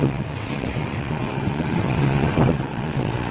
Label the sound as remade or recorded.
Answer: remade